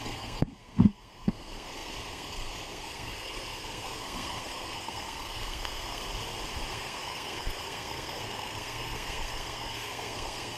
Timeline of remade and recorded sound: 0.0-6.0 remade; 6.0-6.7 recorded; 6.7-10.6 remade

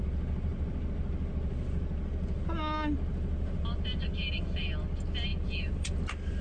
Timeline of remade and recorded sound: 0.0-6.4 recorded